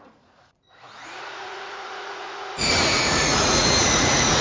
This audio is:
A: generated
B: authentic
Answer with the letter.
A